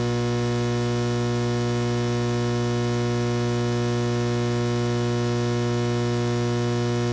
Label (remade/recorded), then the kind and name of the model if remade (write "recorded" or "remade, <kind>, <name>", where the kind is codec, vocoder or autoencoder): recorded